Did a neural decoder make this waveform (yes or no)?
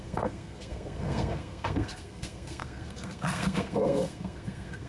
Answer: yes